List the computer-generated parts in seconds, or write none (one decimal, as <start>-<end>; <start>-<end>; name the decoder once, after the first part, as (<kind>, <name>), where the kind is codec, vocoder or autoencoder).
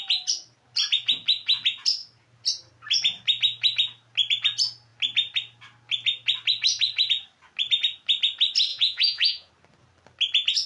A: 8.7-9.5 (vocoder, Vocos)